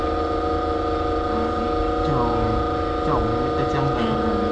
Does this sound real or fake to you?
real